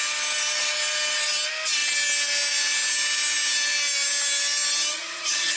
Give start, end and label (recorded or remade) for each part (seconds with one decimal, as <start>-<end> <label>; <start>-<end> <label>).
0.0-4.9 recorded; 4.9-5.6 remade